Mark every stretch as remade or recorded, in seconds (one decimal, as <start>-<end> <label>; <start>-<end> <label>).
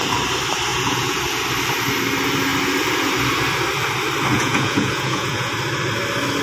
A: 0.0-0.7 recorded; 0.7-1.2 remade; 1.2-4.3 recorded; 4.3-5.5 remade; 5.5-6.4 recorded